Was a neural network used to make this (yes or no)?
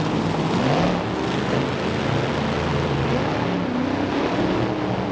no